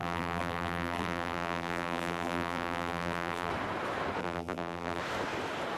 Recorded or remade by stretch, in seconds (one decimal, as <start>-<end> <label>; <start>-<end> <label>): 0.0-3.5 remade; 3.5-4.2 recorded; 4.2-5.0 remade; 5.0-5.8 recorded